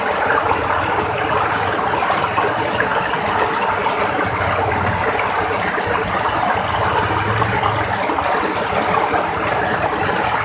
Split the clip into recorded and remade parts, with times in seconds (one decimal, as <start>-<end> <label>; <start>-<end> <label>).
0.0-10.4 recorded